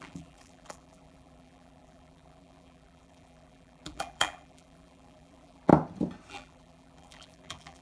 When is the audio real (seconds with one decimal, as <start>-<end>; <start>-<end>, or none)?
5.7-6.3